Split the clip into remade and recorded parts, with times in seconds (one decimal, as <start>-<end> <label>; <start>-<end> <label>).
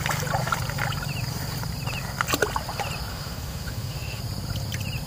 0.0-3.1 recorded; 3.1-4.2 remade; 4.2-5.1 recorded